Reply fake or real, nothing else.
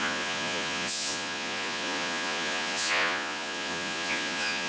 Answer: fake